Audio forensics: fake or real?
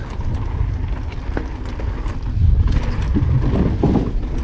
real